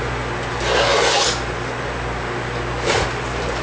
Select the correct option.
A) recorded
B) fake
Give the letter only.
A